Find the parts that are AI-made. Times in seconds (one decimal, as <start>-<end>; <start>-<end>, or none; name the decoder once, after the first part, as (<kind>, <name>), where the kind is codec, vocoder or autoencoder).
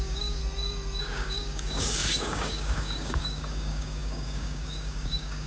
0.0-0.4 (codec, DAC); 1.0-5.5